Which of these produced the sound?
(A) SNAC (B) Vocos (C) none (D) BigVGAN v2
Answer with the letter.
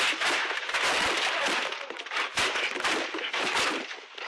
C